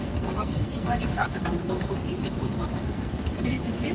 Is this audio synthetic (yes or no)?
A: yes